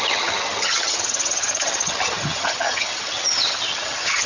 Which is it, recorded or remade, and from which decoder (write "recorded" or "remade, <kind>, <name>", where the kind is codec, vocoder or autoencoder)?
remade, vocoder, HiFi-GAN